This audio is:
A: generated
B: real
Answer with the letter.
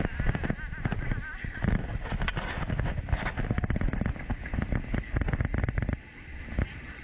B